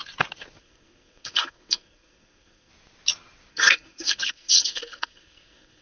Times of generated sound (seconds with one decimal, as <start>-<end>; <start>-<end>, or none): 0.6-2.7; 3.5-5.8